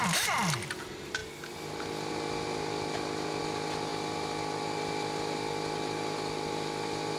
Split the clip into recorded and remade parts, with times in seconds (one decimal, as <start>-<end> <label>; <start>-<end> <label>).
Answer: 0.0-7.2 recorded